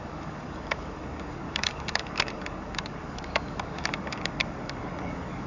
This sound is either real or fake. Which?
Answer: fake